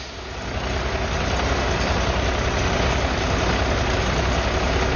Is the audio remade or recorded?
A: recorded